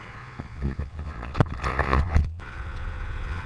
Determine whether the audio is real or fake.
fake